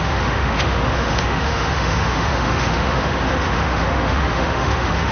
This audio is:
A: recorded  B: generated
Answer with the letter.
B